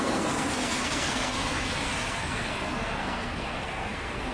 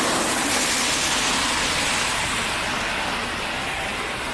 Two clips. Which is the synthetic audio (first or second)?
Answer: first